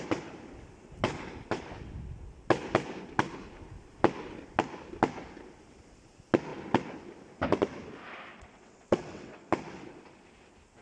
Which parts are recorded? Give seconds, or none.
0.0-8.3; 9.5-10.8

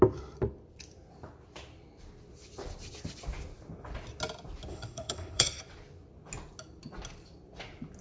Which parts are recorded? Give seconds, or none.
0.0-4.7; 5.6-8.0

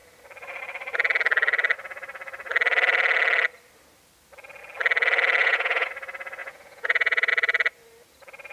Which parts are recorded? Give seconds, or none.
0.0-5.4; 5.9-6.4; 7.3-8.5

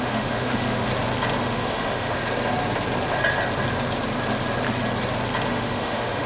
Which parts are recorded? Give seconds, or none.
0.9-1.4; 2.2-5.5

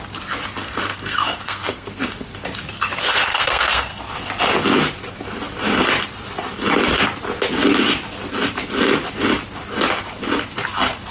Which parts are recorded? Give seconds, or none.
0.0-0.6; 2.1-3.0; 4.0-11.1